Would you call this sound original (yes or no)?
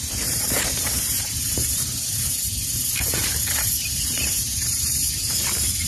no